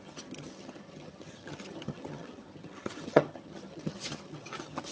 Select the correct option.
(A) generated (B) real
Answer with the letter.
A